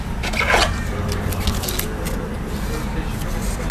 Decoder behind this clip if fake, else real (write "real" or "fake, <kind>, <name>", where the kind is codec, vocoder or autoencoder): real